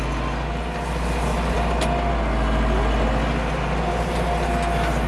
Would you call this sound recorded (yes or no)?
yes